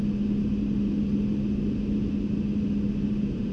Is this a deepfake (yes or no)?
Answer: no